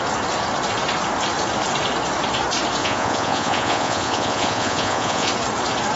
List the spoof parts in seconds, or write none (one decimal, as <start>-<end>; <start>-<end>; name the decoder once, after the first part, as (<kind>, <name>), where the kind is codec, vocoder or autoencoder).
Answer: 2.8-5.3 (vocoder, Vocos)